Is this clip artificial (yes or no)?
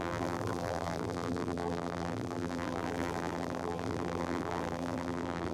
yes